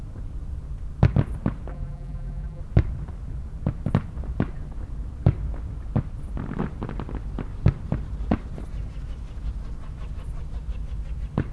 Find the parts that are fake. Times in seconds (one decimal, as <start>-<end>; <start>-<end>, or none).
1.7-2.6